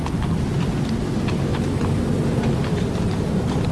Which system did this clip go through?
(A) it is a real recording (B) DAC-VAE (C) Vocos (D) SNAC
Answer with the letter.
A